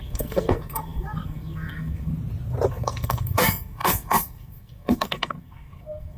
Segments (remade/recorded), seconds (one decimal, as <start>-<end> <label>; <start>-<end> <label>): 0.0-2.1 remade; 2.1-2.7 recorded; 2.7-6.2 remade